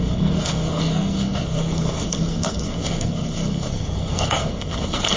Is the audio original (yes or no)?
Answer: no